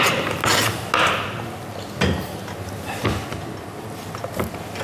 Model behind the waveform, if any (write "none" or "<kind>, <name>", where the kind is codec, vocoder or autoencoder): none